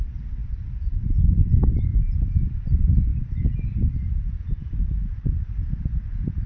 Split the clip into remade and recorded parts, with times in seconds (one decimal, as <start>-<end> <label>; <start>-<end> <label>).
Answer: 0.0-1.9 remade; 1.9-2.7 recorded; 2.7-3.1 remade; 3.1-5.2 recorded; 5.2-6.5 remade